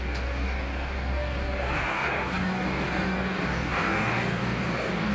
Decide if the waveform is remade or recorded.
remade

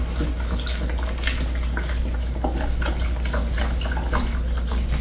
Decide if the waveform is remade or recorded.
recorded